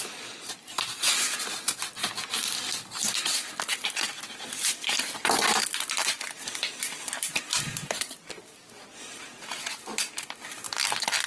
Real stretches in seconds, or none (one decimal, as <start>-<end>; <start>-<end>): 0.0-11.3